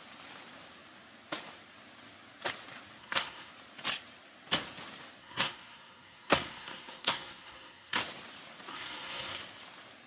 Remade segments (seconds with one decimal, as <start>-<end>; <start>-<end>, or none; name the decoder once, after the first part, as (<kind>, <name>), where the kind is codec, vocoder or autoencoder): 3.0-3.5 (codec, SNAC); 5.2-8.0; 8.7-9.4